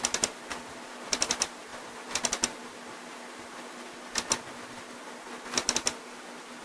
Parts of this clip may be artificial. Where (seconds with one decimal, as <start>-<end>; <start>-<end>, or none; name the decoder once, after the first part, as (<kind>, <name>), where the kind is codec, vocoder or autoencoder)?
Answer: none